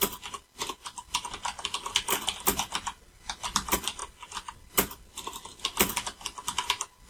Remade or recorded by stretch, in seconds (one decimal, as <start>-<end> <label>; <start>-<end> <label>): 0.0-7.1 recorded